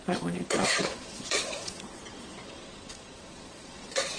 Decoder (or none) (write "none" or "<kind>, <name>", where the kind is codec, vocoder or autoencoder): vocoder, Vocos